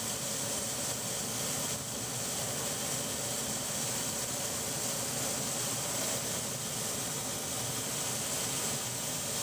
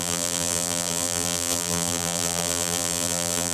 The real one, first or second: first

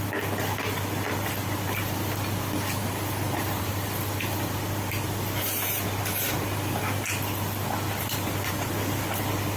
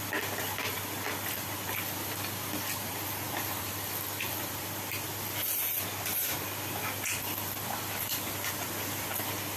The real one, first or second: second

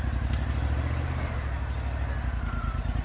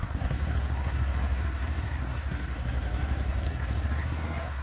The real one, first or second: first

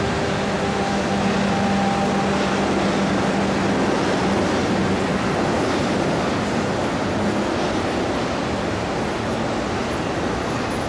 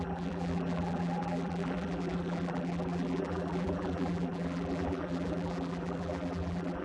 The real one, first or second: first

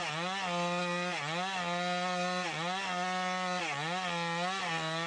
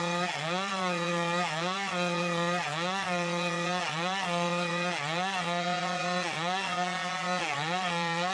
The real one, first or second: first